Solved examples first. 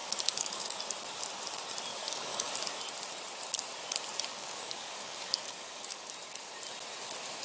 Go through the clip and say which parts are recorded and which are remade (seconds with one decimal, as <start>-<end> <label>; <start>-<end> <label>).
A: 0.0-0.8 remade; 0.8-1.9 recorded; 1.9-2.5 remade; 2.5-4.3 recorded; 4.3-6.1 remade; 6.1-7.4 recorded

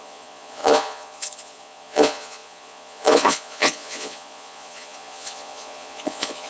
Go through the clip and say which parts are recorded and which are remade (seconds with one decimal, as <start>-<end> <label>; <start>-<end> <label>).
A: 0.0-6.5 remade

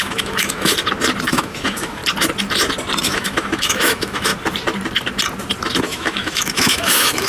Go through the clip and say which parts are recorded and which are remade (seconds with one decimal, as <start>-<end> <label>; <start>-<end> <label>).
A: 0.0-0.7 remade; 0.7-1.3 recorded; 1.3-2.0 remade; 2.0-3.0 recorded; 3.0-4.3 remade; 4.3-5.8 recorded; 5.8-7.3 remade